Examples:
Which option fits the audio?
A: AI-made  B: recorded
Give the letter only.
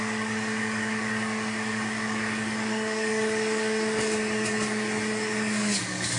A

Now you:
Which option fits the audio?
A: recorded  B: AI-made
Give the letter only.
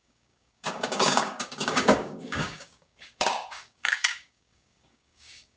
B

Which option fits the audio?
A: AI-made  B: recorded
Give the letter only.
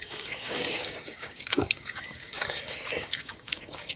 A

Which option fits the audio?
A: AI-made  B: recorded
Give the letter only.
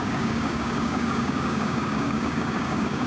A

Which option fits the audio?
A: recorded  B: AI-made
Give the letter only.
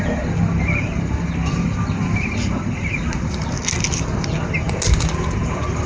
A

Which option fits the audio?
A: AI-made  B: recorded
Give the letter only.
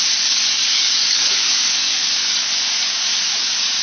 A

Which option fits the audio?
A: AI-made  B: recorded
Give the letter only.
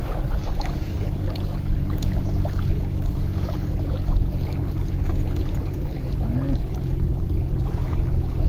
A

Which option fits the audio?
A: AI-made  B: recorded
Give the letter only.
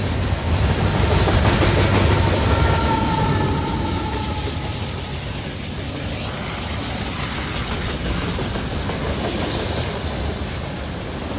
B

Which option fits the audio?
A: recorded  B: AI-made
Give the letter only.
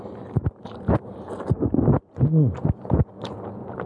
A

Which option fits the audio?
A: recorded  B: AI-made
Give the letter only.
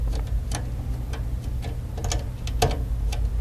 A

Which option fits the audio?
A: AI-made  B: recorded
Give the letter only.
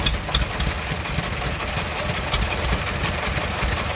B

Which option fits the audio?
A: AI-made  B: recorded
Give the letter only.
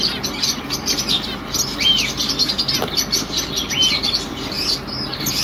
B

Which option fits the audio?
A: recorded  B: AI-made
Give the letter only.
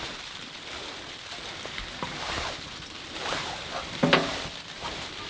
A